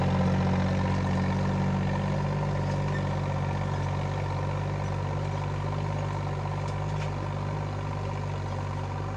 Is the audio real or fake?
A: real